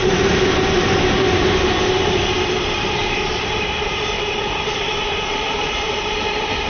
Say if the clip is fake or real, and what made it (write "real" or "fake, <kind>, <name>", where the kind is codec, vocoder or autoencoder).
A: fake, vocoder, BigVGAN v2